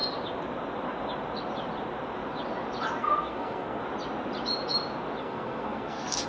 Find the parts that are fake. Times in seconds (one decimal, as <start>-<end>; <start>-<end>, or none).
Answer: 3.0-3.8; 5.2-6.3